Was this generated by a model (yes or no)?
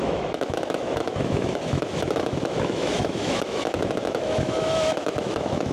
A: yes